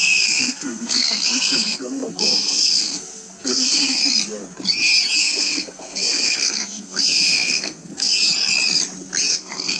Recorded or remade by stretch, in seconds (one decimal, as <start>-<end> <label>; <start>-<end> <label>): 0.0-4.0 remade; 4.0-5.2 recorded; 5.2-8.1 remade; 8.1-9.3 recorded; 9.3-9.8 remade

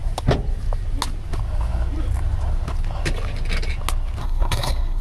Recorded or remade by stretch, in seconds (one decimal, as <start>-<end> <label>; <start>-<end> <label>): 0.0-4.2 recorded; 4.2-5.0 remade

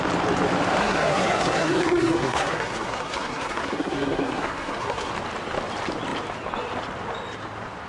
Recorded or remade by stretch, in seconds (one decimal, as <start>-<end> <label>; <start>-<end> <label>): 0.0-0.8 recorded; 0.8-5.1 remade; 5.1-7.9 recorded

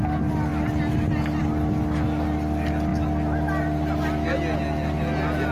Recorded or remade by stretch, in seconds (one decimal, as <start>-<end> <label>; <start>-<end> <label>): 0.0-5.5 recorded

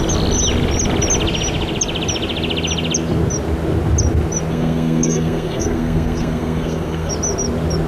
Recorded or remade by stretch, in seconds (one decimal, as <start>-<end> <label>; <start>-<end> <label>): 0.0-4.5 recorded; 4.5-7.1 remade; 7.1-7.9 recorded

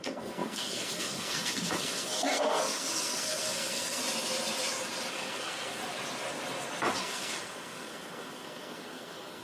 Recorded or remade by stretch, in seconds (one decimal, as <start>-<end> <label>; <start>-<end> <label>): 0.0-4.0 remade; 4.0-5.1 recorded; 5.1-5.8 remade; 5.8-7.0 recorded; 7.0-9.4 remade

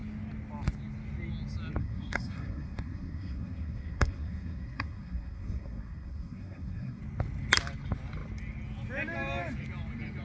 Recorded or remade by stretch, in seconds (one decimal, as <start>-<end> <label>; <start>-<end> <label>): 0.0-1.8 recorded; 1.8-7.0 remade; 7.0-10.2 recorded

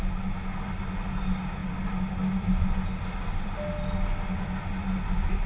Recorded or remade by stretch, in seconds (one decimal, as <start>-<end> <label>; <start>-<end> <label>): 0.0-5.5 recorded